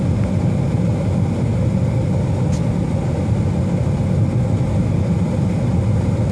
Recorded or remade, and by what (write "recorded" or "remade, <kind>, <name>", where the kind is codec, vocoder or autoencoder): recorded